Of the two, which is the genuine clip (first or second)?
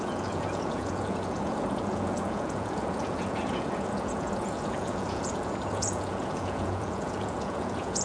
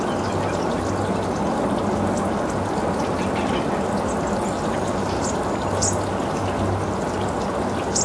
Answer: second